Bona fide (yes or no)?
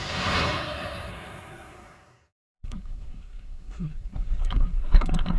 no